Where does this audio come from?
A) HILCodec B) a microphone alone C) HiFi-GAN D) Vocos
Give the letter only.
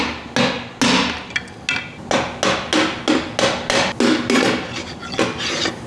B